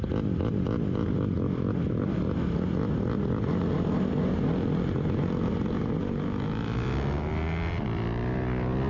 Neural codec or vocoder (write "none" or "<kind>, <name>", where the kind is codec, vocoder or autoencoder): none